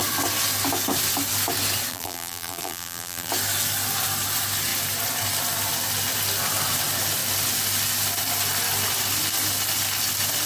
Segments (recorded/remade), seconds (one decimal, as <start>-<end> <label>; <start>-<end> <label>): 0.0-1.9 recorded; 1.9-3.3 remade; 3.3-10.5 recorded